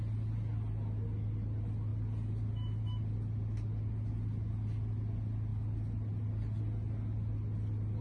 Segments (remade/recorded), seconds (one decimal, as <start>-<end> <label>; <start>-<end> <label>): 0.0-8.0 recorded